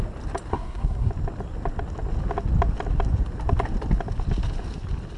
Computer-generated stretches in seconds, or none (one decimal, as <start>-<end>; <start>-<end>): 0.5-1.1